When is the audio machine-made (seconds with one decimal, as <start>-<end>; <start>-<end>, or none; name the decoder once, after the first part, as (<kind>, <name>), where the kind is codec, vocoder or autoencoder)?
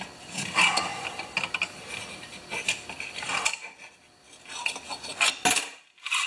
none